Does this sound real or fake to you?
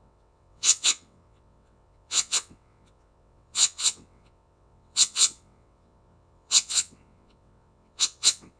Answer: fake